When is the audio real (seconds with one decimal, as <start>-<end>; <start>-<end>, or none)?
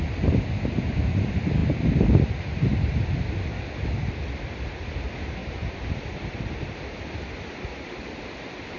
0.0-5.4; 8.2-8.8